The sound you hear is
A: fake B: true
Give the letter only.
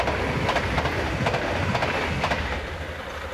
B